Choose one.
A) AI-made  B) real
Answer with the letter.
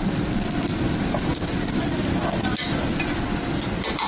B